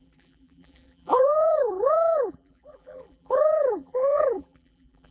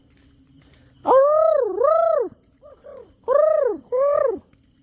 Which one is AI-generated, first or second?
first